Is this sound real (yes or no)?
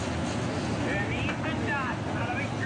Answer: yes